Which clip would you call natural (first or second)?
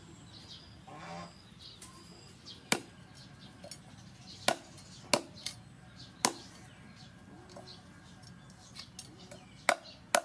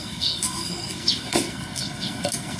first